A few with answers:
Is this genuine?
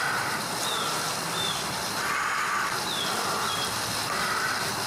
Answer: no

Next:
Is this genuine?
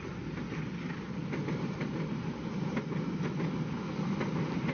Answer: yes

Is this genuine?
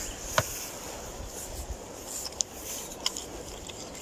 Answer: yes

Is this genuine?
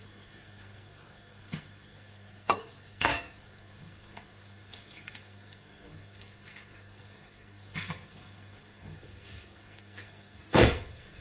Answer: no